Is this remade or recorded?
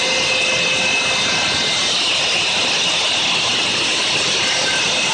recorded